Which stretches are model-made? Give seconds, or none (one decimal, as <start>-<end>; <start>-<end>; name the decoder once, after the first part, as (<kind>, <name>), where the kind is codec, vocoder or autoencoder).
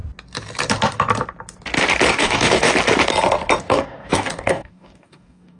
2.1-2.7 (codec, DAC); 3.6-5.6